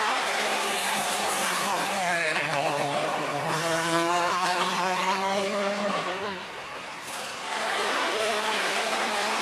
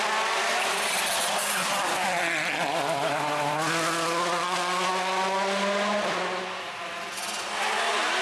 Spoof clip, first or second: first